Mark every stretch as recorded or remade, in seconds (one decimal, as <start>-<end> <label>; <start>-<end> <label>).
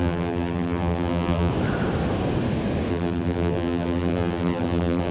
0.0-1.5 remade; 1.5-2.9 recorded; 2.9-5.1 remade